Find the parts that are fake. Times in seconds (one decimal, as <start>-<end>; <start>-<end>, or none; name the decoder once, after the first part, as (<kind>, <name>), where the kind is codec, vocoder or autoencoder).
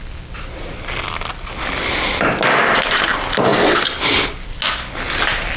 none